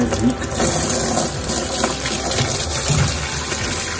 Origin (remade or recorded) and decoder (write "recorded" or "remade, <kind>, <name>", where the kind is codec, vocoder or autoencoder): recorded